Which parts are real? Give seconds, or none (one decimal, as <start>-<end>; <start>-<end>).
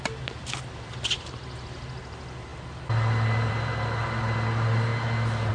0.0-5.5